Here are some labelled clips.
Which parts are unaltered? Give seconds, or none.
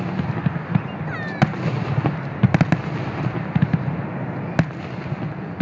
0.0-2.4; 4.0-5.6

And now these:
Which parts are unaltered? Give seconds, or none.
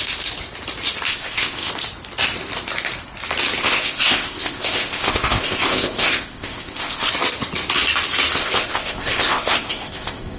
0.0-1.1; 1.7-3.6; 7.1-8.4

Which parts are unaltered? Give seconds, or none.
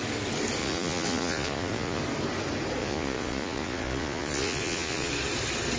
0.0-0.6; 2.0-2.8; 5.1-5.8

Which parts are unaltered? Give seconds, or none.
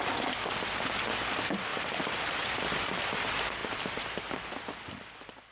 0.0-1.7; 2.4-3.6; 4.4-5.5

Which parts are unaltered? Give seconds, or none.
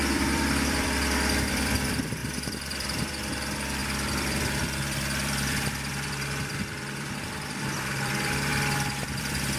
8.5-9.2